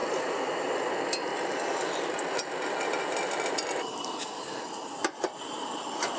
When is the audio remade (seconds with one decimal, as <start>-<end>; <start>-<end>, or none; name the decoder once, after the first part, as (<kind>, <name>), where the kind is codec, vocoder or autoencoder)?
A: none